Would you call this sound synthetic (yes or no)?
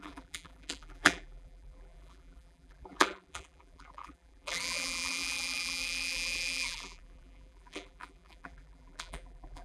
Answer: yes